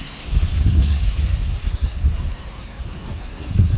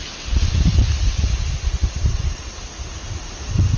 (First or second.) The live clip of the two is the second